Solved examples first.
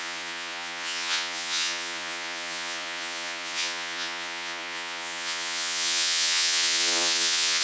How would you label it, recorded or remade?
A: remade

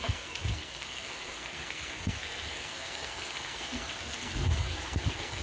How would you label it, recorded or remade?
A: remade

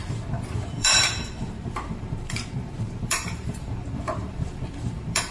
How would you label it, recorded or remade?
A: remade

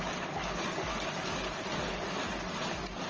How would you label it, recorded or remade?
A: recorded